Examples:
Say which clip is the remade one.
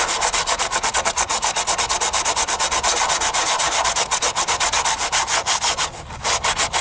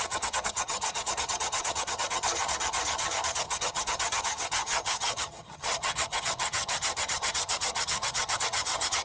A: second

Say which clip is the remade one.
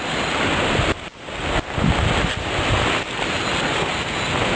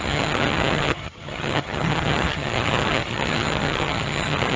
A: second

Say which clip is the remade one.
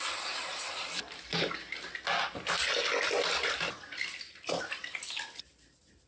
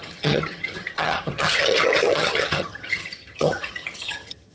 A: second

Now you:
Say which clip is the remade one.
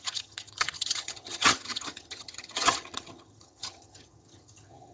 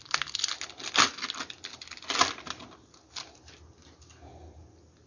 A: first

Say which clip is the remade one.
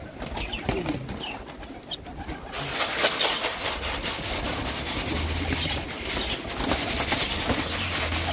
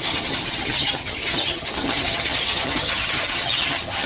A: second